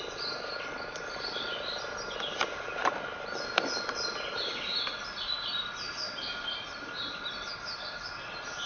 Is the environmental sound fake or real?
real